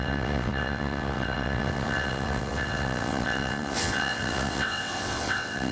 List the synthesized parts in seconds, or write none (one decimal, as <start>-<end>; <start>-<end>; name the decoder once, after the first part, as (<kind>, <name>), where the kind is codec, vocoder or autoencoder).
0.0-5.7 (vocoder, WaveNeXt)

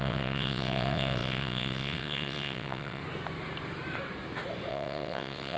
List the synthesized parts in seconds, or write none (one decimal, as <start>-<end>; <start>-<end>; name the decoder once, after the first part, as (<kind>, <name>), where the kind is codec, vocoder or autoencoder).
0.0-3.0 (vocoder, WaveNeXt); 4.7-5.6

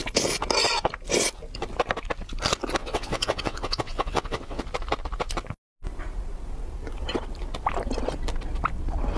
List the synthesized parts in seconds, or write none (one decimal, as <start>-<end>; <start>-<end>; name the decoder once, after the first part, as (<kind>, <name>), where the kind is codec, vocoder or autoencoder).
2.8-4.6 (vocoder, WaveNeXt)

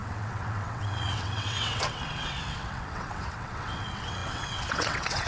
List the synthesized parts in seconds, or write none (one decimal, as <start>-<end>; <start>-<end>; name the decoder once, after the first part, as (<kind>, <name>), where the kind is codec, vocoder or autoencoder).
0.0-5.3 (vocoder, WaveNeXt)

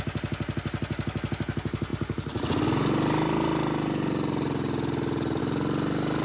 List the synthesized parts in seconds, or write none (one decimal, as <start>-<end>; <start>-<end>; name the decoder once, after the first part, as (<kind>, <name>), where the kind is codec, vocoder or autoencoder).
none

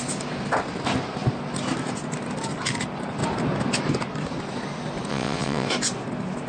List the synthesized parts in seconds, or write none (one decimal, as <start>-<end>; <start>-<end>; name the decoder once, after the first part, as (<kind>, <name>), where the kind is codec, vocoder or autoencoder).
5.1-5.7 (vocoder, WaveNeXt)